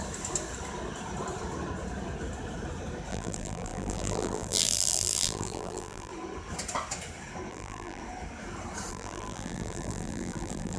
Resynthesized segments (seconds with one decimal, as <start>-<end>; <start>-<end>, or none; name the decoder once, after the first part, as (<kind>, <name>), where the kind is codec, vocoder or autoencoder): 3.1-6.1 (vocoder, BigVGAN v2); 7.5-8.0; 8.9-10.8